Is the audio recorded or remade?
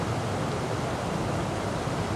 recorded